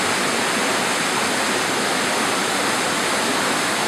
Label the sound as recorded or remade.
recorded